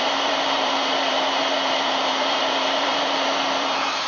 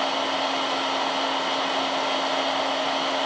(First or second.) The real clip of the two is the second